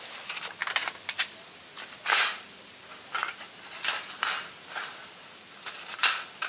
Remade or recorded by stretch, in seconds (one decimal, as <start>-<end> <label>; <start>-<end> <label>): 0.0-6.5 recorded